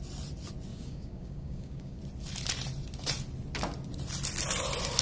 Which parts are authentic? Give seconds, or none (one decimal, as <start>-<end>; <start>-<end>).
0.0-0.7; 2.0-5.0

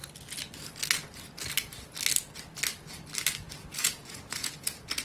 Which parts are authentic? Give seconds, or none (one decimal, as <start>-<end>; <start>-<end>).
0.0-3.7

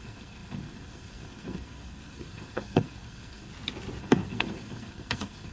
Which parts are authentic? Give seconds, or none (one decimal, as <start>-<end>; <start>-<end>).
3.5-4.0

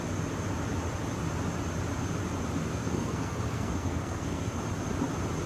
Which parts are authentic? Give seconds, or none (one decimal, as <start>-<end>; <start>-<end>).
0.0-2.7; 4.6-5.5